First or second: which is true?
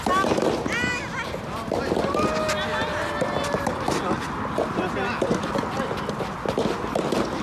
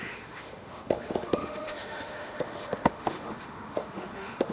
first